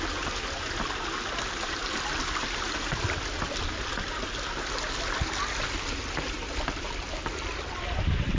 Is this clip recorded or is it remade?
recorded